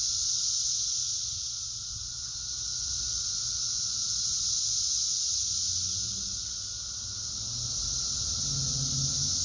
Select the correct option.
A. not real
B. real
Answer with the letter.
B